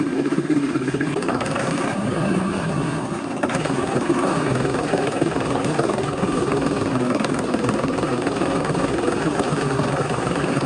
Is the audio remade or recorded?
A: remade